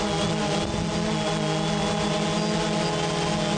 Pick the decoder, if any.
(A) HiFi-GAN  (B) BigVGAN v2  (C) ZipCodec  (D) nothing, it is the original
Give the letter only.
D